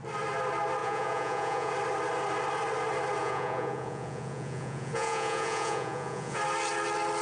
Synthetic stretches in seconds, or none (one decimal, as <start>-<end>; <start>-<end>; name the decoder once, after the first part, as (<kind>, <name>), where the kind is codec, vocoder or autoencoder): 0.8-1.7 (vocoder, Vocos); 3.2-6.4